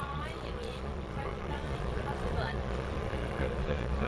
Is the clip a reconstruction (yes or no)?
yes